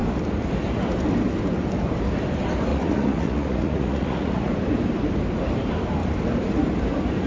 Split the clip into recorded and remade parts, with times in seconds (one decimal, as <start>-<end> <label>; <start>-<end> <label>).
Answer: 0.0-2.7 recorded; 2.7-4.5 remade; 4.5-7.3 recorded